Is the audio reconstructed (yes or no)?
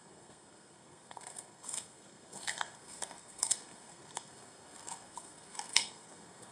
yes